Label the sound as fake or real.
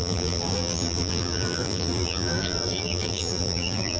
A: fake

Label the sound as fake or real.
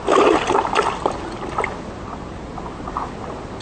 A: real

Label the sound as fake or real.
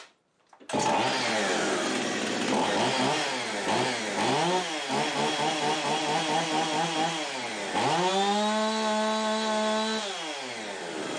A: real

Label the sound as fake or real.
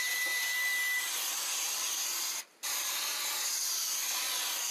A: real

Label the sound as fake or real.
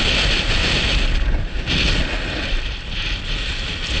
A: real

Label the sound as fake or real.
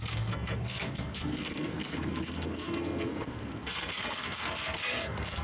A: fake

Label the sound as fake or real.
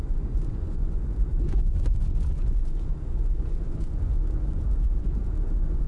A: fake